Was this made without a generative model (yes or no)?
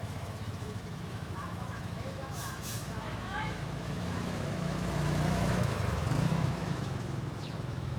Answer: no